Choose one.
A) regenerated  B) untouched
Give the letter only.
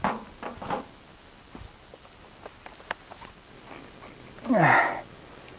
B